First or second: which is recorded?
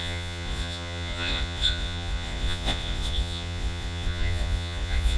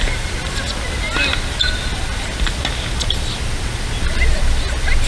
second